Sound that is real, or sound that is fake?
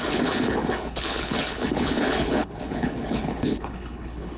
fake